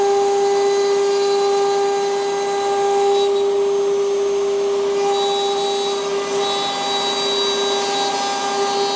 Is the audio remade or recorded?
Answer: recorded